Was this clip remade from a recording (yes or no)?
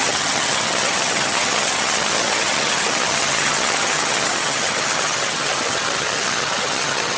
yes